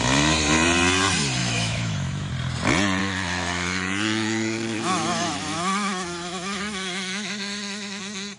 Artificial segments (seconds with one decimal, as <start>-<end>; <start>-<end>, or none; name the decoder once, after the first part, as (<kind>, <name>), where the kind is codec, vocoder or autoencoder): 1.4-2.3 (autoencoder, DAC-VAE); 3.0-8.0